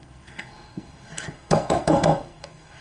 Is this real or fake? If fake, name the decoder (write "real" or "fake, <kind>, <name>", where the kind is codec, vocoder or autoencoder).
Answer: fake, codec, SNAC